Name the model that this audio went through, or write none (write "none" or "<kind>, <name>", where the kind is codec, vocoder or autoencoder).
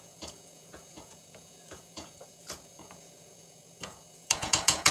vocoder, Vocos